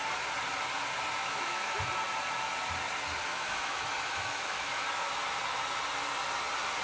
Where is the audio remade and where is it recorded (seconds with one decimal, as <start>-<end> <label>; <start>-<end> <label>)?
0.0-1.2 recorded; 1.2-1.8 remade; 1.8-3.3 recorded; 3.3-5.1 remade; 5.1-6.8 recorded